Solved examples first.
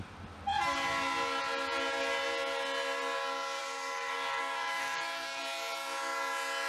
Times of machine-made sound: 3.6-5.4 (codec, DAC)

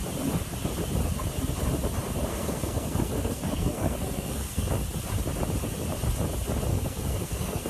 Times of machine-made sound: 2.3-4.7 (codec, SNAC); 6.7-7.7

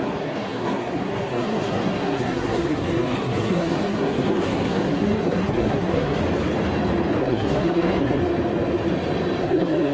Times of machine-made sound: 0.0-6.2 (codec, SNAC); 7.2-8.2; 9.4-9.9

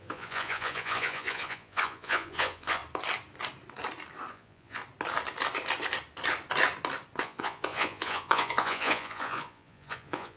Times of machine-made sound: 0.0-2.8 (vocoder, Vocos); 4.3-4.8; 7.2-10.4

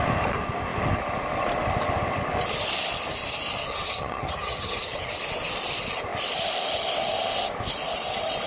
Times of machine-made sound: 3.6-5.1 (vocoder, HiFi-GAN)

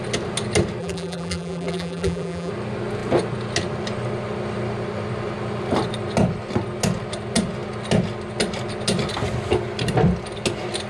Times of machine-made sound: 0.8-2.5 (vocoder, BigVGAN v2)

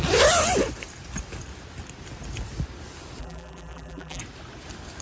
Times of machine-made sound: 3.2-4.2 (vocoder, BigVGAN v2)